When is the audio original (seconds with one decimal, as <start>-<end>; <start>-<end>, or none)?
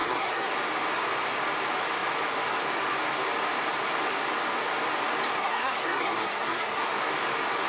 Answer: 0.5-5.4; 6.9-7.7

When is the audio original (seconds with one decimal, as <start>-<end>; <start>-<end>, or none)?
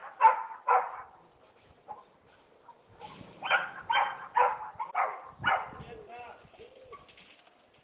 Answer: 0.7-7.8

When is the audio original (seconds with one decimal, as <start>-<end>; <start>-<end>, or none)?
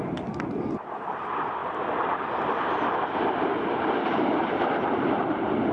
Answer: none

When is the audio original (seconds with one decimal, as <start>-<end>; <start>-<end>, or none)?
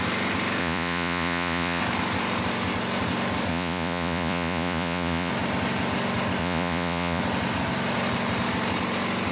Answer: 0.0-0.6; 1.8-3.5; 5.3-6.4; 7.2-9.3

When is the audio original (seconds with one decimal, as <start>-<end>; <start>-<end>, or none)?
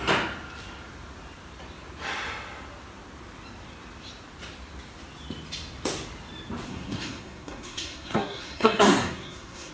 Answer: 0.0-6.7